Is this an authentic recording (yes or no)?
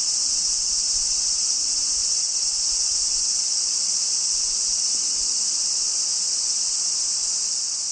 no